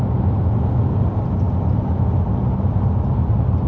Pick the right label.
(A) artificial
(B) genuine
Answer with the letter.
B